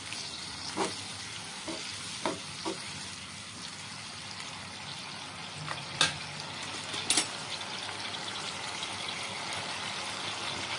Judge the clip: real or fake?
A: real